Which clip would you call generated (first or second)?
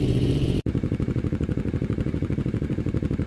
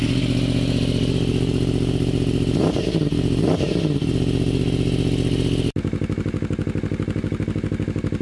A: first